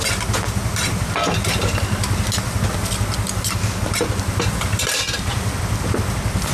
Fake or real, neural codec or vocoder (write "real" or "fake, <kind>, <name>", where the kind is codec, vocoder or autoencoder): real